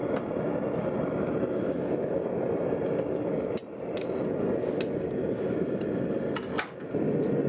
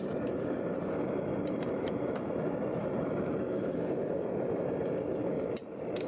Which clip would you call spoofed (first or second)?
second